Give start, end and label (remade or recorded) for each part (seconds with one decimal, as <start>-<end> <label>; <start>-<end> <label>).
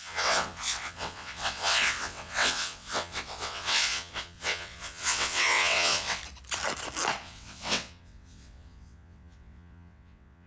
0.0-6.2 remade; 6.2-7.2 recorded; 7.2-10.5 remade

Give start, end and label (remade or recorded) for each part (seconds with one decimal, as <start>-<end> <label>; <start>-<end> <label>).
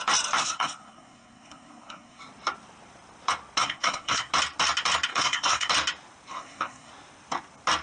0.0-0.4 recorded; 0.4-2.2 remade; 2.2-3.6 recorded; 3.6-4.3 remade; 4.3-5.1 recorded; 5.1-5.7 remade; 5.7-6.3 recorded; 6.3-6.9 remade; 6.9-7.8 recorded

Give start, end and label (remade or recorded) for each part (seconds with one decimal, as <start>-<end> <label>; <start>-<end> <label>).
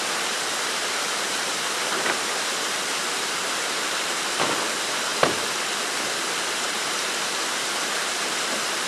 0.0-5.1 remade; 5.1-6.4 recorded; 6.4-8.9 remade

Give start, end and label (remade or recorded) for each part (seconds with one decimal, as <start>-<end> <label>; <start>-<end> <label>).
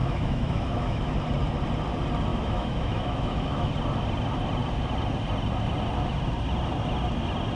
0.0-1.1 remade; 1.1-2.3 recorded; 2.3-3.7 remade; 3.7-7.6 recorded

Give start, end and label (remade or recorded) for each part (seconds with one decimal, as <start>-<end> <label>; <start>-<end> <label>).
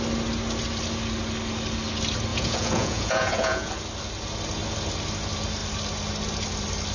0.0-2.3 recorded; 2.3-3.7 remade; 3.7-6.9 recorded